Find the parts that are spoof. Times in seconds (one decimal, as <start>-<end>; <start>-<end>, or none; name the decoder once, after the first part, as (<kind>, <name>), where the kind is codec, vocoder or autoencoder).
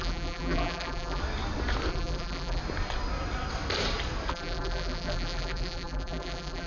0.0-1.2 (vocoder, BigVGAN v2); 1.9-2.6; 4.3-6.7